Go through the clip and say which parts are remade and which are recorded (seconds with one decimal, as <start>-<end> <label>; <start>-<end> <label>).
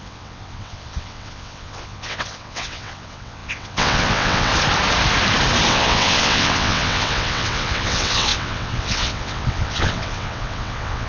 0.0-4.5 remade; 4.5-5.7 recorded; 5.7-11.1 remade